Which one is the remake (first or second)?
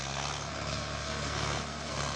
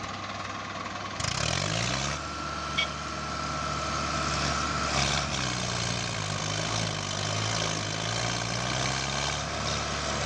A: first